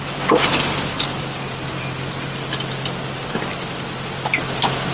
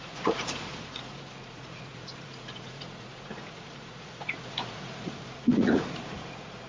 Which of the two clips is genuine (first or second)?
first